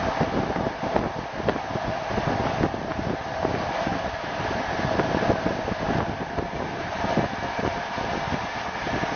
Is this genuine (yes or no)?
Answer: yes